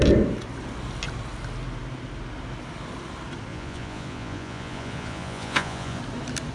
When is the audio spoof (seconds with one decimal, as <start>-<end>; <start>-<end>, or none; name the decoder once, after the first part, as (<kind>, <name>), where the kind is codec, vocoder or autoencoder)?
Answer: 3.5-6.0 (vocoder, Vocos)